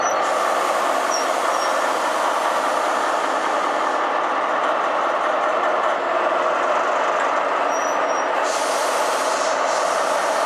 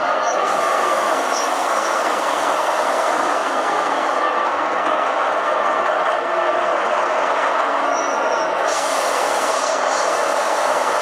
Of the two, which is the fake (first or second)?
second